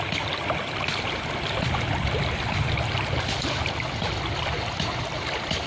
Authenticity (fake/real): real